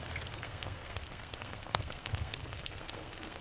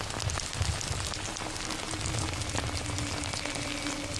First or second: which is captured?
second